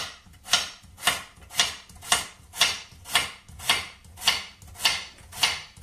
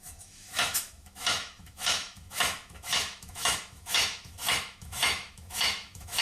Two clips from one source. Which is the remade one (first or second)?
second